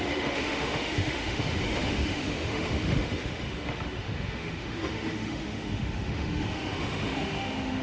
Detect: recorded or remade remade